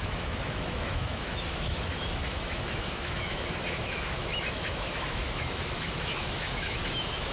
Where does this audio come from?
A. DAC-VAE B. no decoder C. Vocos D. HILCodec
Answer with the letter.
A